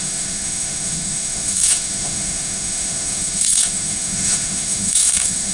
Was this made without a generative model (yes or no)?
no